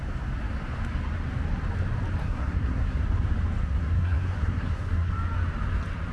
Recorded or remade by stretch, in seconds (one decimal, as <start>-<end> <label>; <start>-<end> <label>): 0.0-2.2 recorded; 2.2-3.0 remade; 3.0-3.6 recorded; 3.6-5.1 remade; 5.1-6.1 recorded